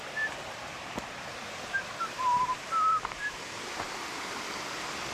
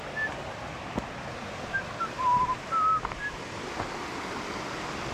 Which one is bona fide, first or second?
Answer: second